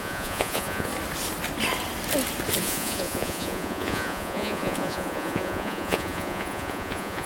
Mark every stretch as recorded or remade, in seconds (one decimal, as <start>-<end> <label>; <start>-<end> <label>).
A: 0.0-0.9 remade; 0.9-2.6 recorded; 2.6-7.3 remade